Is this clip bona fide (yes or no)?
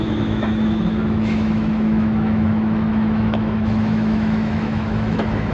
no